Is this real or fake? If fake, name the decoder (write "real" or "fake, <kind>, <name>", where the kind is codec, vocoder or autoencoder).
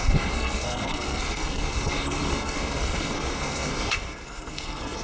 fake, codec, SNAC